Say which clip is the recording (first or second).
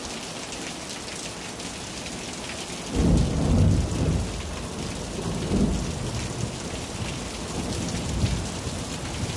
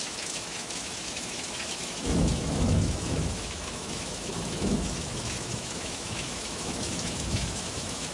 first